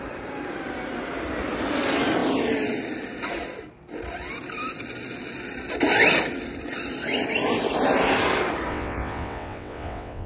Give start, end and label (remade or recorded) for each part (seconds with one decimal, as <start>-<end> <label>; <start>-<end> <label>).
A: 0.0-8.7 recorded; 8.7-10.3 remade